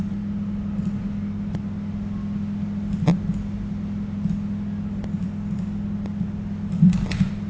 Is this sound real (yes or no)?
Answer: yes